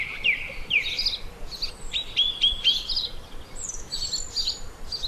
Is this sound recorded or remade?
recorded